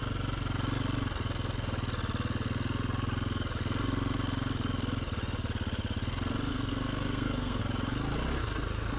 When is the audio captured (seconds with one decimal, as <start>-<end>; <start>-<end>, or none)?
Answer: 0.0-6.5; 7.6-9.0

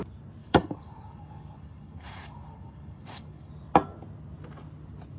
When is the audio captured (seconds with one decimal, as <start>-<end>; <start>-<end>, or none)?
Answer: 0.0-0.4; 3.5-5.2

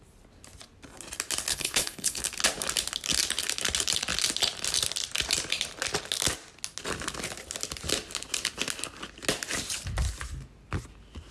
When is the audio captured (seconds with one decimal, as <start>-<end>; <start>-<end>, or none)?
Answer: 0.0-1.5; 2.2-11.3